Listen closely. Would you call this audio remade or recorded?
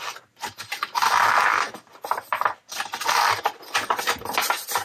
recorded